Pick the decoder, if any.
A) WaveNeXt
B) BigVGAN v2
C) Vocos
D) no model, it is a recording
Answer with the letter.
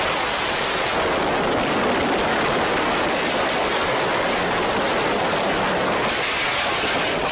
D